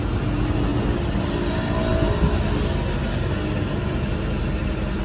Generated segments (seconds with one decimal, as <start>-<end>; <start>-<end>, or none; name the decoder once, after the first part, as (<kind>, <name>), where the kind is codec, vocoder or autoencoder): none